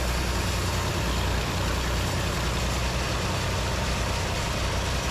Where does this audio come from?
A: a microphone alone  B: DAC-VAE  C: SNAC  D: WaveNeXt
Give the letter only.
A